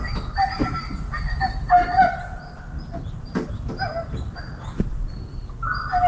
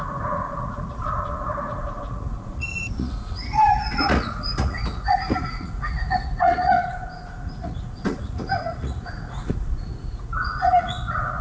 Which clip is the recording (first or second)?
first